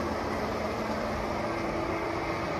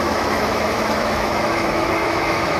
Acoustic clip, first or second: first